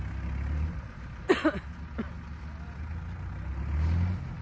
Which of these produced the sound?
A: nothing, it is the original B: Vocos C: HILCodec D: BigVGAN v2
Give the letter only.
A